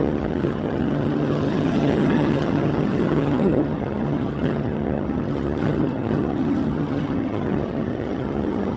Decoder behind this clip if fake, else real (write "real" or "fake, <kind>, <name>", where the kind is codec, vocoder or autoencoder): fake, vocoder, HiFi-GAN